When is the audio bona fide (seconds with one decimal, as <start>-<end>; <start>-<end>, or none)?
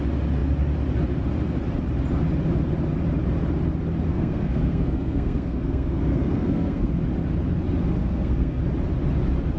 0.0-4.1; 6.9-8.0; 8.6-9.6